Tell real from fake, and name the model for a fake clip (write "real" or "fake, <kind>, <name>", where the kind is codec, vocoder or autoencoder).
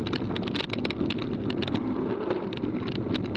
real